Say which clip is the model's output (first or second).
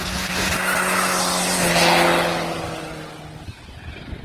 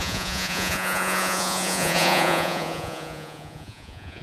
second